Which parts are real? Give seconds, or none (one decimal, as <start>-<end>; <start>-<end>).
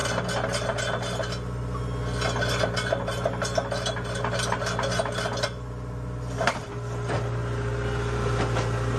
0.0-9.0